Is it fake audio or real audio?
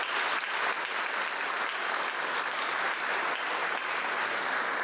real